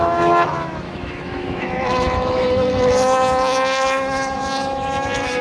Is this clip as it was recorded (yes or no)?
no